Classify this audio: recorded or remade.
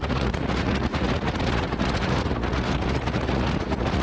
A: remade